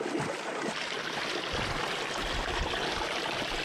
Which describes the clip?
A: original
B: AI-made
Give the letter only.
A